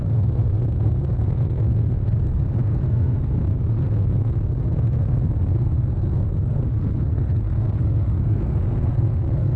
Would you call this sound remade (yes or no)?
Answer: yes